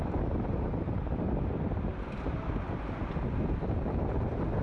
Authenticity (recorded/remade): recorded